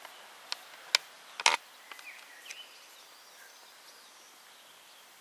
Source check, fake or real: real